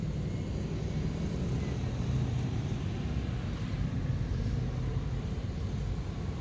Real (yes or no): yes